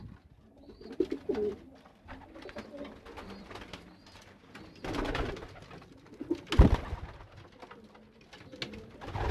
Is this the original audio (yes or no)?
yes